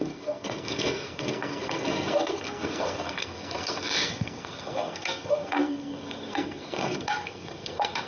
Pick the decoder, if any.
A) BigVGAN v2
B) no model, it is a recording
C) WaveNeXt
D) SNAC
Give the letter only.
D